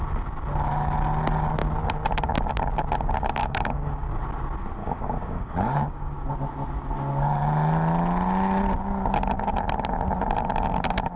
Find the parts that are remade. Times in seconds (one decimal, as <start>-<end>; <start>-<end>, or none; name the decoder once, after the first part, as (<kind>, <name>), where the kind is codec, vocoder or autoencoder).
3.4-4.2 (codec, DAC); 4.8-6.4